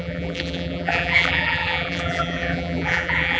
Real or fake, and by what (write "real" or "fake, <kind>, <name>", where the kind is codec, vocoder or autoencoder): fake, vocoder, BigVGAN v2